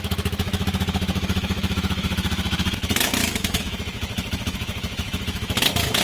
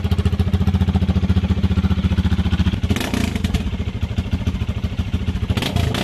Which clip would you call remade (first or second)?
first